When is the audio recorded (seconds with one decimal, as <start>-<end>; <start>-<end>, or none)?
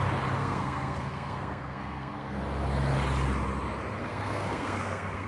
0.0-0.4; 2.4-4.0